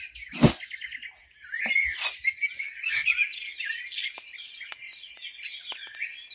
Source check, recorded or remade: recorded